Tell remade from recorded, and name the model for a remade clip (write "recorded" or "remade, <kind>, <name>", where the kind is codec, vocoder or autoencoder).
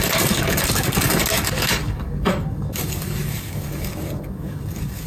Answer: remade, codec, DAC